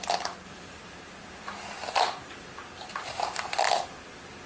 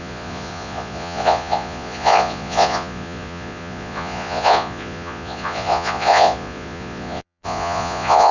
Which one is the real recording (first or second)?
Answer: first